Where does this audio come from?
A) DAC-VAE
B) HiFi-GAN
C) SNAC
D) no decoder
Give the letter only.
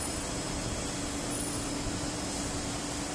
D